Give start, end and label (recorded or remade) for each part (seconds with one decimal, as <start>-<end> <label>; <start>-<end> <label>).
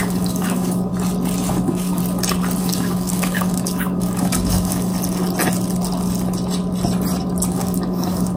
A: 0.0-0.9 remade; 0.9-1.5 recorded; 1.5-2.0 remade; 2.0-2.6 recorded; 2.6-4.9 remade; 4.9-7.5 recorded; 7.5-8.4 remade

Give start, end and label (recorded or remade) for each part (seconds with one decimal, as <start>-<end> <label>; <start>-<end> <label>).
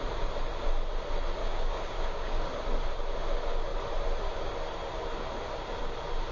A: 0.0-1.4 recorded; 1.4-2.6 remade; 2.6-6.3 recorded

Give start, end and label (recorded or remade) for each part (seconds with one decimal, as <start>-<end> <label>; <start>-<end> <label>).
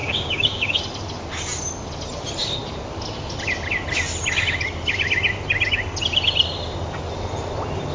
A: 0.0-0.8 remade; 0.8-7.9 recorded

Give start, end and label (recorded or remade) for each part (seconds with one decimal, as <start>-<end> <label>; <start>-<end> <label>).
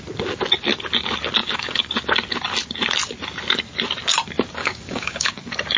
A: 0.0-1.4 recorded; 1.4-2.0 remade; 2.0-4.6 recorded; 4.6-5.3 remade; 5.3-5.8 recorded